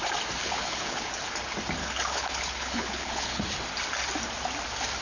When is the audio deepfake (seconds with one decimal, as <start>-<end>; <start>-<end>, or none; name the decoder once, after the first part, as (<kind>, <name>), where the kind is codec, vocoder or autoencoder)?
0.4-1.1 (codec, HILCodec); 1.8-3.4